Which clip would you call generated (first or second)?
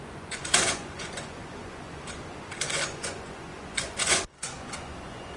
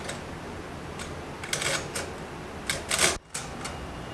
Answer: first